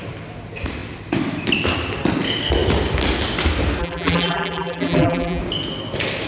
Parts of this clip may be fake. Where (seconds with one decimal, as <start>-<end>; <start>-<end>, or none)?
3.8-5.4